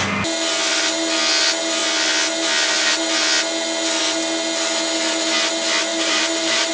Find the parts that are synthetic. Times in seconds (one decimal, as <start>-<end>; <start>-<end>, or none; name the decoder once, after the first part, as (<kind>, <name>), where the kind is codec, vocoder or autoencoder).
5.9-6.7 (vocoder, BigVGAN v2)